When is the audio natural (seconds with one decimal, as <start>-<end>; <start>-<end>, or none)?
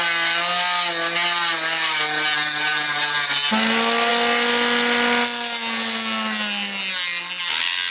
0.0-7.9